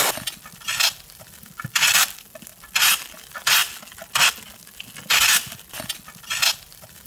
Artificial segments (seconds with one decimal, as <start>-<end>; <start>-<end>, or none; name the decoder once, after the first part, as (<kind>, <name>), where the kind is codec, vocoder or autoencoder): none

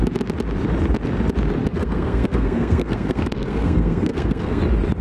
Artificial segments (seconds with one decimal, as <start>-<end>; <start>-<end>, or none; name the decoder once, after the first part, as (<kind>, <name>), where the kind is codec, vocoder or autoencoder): 1.7-4.6 (codec, SNAC)

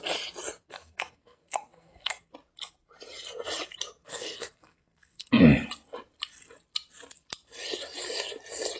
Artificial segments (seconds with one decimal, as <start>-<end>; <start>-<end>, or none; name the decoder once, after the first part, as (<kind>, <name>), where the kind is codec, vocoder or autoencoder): 0.6-2.3 (codec, SNAC); 4.0-5.4

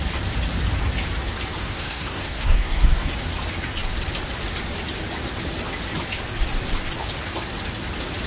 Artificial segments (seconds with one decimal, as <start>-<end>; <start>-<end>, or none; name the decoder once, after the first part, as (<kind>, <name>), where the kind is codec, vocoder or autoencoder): 1.6-3.1 (codec, SNAC)

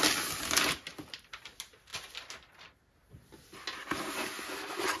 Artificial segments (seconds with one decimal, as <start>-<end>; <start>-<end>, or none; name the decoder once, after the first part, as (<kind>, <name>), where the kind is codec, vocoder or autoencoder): none

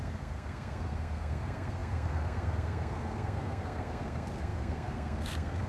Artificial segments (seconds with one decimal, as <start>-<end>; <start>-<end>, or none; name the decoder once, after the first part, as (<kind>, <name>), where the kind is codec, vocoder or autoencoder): 0.0-5.7 (codec, SNAC)